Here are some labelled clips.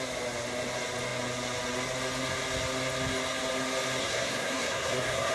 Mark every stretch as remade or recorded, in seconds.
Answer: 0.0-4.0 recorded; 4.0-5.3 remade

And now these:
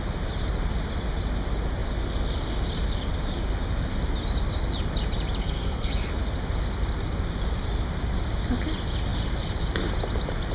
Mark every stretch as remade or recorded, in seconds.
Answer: 0.0-5.4 recorded; 5.4-5.9 remade; 5.9-10.5 recorded

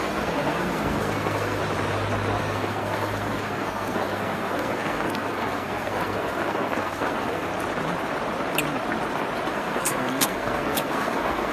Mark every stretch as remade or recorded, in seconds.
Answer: 0.0-1.6 remade; 1.6-2.4 recorded; 2.4-7.5 remade; 7.5-9.5 recorded; 9.5-11.5 remade

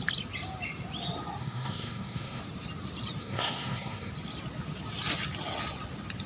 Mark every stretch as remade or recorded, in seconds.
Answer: 0.0-1.4 recorded; 1.4-2.4 remade; 2.4-3.2 recorded; 3.2-4.1 remade; 4.1-6.3 recorded

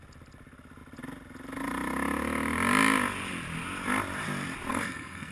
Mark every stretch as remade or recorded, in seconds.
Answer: 0.0-4.7 recorded; 4.7-5.3 remade

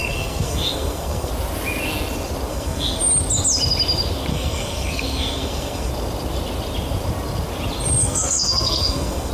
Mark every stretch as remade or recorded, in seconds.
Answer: 0.0-1.3 remade; 1.3-2.5 recorded; 2.5-3.0 remade; 3.0-4.3 recorded; 4.3-5.9 remade; 5.9-8.0 recorded; 8.0-9.3 remade

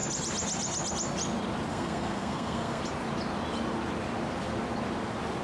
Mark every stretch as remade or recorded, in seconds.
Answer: 0.0-1.7 recorded; 1.7-2.8 remade; 2.8-5.4 recorded